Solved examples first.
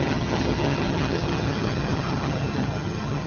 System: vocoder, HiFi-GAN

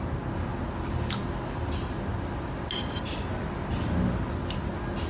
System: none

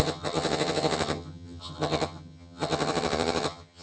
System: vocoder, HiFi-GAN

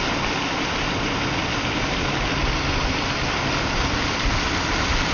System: none